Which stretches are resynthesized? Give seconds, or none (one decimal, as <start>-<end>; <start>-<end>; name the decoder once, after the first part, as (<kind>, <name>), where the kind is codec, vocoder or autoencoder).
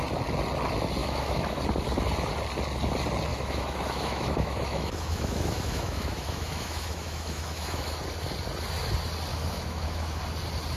1.0-1.6 (autoencoder, DAC-VAE); 3.3-7.9; 9.3-10.2